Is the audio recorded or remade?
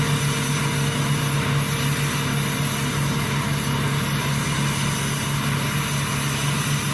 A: recorded